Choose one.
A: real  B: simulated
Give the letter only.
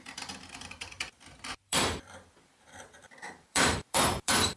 B